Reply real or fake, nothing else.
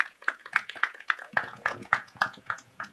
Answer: fake